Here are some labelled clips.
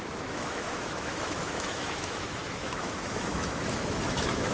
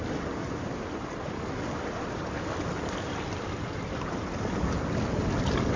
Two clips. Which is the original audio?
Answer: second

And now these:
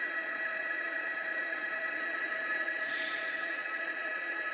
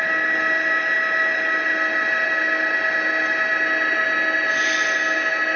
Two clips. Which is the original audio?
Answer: second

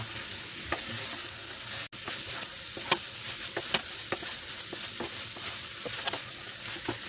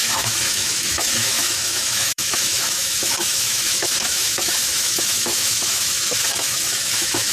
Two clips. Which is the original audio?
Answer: first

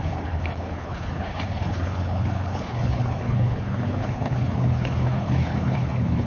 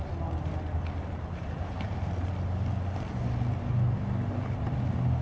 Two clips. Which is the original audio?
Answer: second